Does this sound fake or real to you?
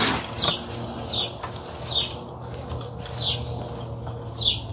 real